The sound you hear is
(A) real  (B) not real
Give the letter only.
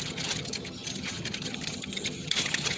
B